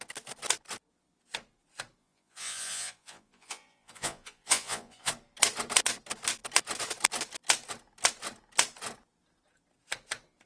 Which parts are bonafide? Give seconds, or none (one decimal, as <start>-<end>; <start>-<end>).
0.0-2.0; 5.1-10.5